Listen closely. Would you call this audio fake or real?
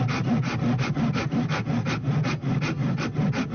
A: real